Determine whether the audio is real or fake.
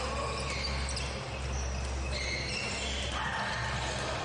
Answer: real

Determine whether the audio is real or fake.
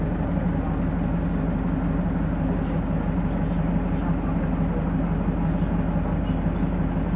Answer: real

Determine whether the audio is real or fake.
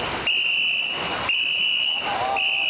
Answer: real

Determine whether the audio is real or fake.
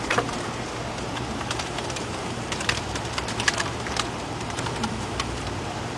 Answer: fake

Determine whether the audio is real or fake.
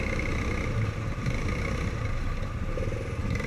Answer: real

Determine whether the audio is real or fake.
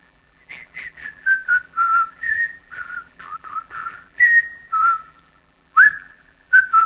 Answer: fake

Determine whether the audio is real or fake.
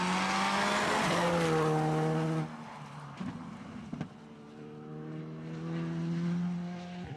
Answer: real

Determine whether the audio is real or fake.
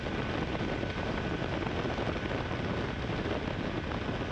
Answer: real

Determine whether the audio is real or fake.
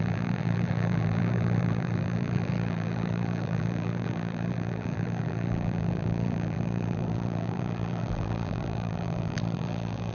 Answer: fake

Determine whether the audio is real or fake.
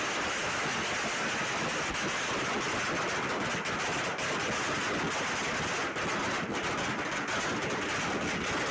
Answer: real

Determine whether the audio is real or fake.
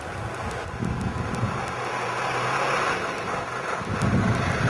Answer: real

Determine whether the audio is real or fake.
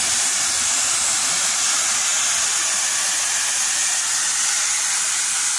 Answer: real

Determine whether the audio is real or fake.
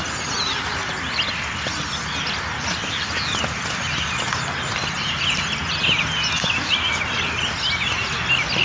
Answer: real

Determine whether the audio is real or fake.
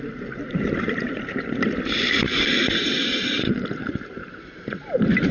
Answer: fake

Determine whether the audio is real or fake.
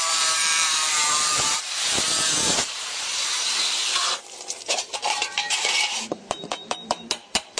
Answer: fake